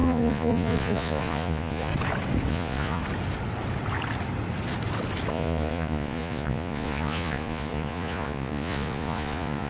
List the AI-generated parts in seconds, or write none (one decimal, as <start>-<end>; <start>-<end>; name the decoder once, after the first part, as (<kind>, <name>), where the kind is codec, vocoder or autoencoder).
0.0-1.9 (vocoder, Vocos); 2.5-3.0; 5.3-9.7